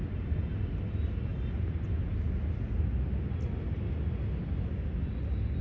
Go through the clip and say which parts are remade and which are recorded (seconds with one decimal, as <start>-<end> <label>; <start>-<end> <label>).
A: 0.0-5.6 recorded